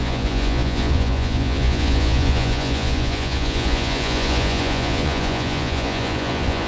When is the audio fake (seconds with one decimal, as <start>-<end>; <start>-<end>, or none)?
0.0-6.7